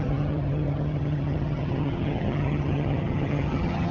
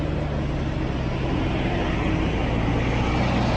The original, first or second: second